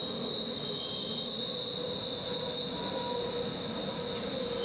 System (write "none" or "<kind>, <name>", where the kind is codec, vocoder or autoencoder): none